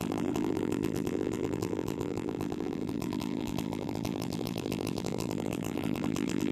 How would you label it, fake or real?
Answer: fake